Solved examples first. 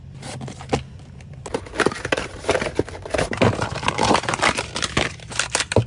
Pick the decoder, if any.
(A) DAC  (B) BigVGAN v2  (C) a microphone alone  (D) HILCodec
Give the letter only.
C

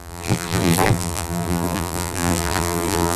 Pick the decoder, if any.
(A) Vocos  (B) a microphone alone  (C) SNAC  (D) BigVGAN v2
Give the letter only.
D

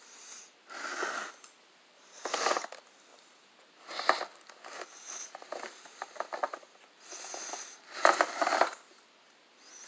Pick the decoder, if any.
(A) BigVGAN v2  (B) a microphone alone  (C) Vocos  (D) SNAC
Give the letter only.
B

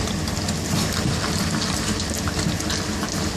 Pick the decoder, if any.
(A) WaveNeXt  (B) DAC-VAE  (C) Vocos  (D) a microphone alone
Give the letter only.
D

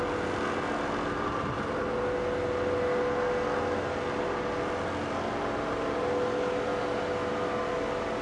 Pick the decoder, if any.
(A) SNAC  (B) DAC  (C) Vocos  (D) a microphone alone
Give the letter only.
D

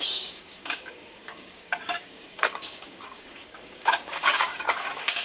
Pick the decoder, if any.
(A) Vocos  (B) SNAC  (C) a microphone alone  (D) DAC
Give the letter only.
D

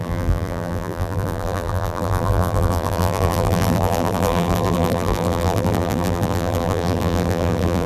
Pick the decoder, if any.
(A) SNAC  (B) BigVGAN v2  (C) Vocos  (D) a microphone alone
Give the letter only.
B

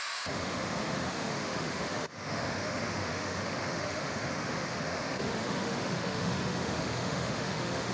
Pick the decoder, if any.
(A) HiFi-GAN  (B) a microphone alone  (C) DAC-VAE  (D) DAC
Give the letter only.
C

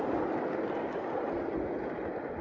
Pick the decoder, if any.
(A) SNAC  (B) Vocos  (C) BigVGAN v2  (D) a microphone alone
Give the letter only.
D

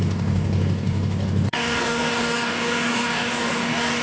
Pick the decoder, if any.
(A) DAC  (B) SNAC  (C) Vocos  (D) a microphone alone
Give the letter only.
A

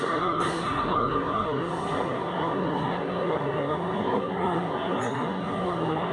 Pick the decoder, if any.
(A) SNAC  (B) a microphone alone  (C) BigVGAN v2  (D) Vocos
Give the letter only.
A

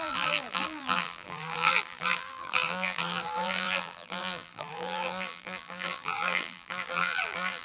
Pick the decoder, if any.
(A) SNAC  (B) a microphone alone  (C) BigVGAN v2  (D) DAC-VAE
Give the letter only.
C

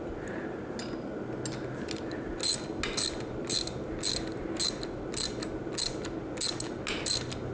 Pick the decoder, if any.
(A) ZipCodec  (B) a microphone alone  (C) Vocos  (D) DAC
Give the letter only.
B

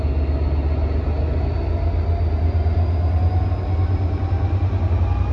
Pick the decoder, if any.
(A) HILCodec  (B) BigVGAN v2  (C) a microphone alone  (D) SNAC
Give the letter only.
C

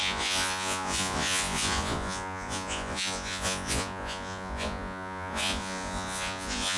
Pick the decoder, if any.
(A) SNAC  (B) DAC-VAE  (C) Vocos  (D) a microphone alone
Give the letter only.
C